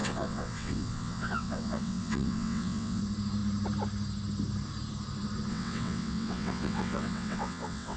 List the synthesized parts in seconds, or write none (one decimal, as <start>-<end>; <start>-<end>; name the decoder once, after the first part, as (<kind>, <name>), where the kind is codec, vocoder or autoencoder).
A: 0.0-3.0 (vocoder, WaveNeXt); 5.5-8.0